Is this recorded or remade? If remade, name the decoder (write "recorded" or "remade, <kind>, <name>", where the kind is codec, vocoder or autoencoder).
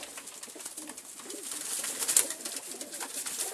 recorded